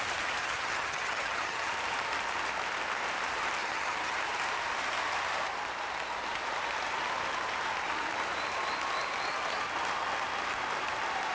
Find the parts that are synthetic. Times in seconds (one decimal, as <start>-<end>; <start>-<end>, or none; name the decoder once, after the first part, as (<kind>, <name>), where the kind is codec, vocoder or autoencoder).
0.4-1.7 (vocoder, HiFi-GAN); 3.6-4.2